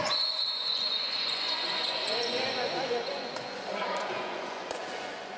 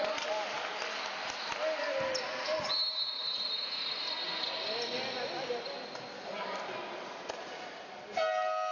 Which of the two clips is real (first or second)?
second